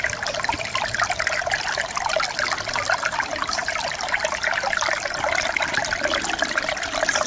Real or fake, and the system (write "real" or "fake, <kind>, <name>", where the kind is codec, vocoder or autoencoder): real